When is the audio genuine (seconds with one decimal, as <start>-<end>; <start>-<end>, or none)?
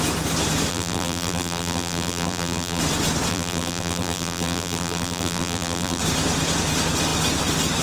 0.0-0.7; 2.8-3.3; 6.0-7.8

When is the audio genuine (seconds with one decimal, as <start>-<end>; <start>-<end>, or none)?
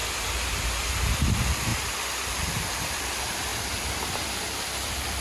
0.0-0.9; 1.7-2.4